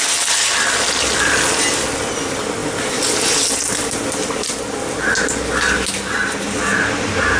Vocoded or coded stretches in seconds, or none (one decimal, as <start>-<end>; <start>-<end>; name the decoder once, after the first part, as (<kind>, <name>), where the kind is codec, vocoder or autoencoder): none